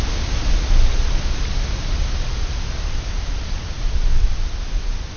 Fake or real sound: real